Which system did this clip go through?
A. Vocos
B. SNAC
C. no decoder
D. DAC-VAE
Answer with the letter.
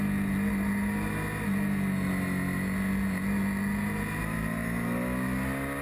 C